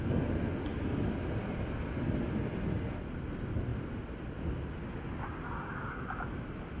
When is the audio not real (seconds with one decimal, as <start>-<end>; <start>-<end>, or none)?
none